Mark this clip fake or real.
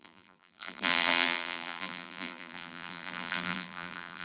fake